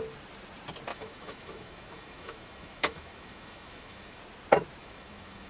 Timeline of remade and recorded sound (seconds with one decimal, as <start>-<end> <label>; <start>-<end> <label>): 0.0-0.9 recorded; 0.9-4.2 remade; 4.2-4.8 recorded; 4.8-5.5 remade